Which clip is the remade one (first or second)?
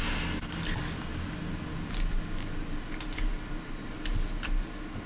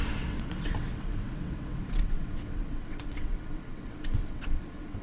second